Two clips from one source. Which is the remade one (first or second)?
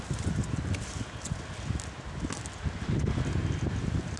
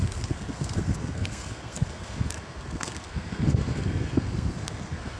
second